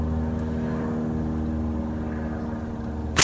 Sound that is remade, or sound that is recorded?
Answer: recorded